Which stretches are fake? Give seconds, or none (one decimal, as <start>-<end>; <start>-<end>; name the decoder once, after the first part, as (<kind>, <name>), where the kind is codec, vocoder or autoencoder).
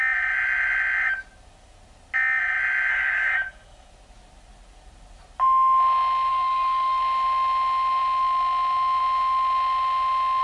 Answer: 2.9-3.9 (codec, DAC); 6.3-7.0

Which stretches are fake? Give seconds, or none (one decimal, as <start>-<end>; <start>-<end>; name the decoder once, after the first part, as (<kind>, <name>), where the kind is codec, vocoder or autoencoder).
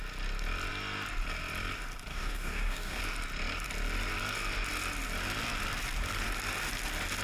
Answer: 2.1-3.0 (codec, DAC)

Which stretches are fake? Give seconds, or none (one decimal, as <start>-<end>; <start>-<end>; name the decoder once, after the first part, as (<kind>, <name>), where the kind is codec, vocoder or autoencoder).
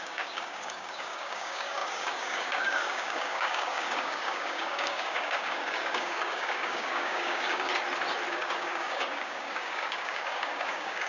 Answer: 0.0-7.7 (codec, DAC); 8.3-11.1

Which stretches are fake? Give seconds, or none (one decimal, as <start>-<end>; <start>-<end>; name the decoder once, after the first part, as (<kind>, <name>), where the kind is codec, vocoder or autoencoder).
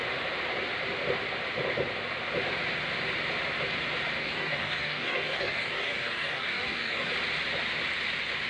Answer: 4.2-7.1 (codec, DAC)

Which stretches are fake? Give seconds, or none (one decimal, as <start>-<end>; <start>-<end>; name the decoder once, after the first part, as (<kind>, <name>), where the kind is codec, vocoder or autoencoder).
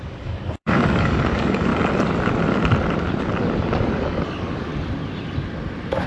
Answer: 0.0-1.7 (codec, DAC); 3.9-4.7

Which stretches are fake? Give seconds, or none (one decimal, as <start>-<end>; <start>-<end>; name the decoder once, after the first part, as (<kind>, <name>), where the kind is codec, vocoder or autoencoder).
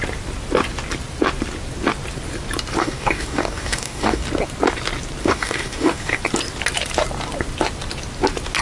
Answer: 2.8-4.2 (codec, DAC); 5.2-6.2